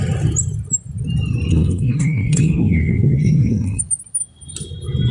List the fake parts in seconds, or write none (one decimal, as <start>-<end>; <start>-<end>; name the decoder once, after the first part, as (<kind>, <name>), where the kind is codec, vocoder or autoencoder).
1.5-3.8 (codec, SNAC)